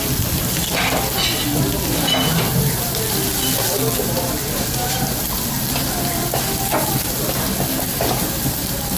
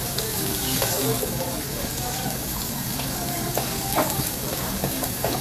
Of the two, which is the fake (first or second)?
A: second